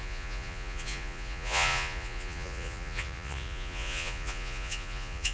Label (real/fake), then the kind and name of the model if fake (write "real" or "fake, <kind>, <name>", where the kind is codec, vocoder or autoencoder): fake, vocoder, Vocos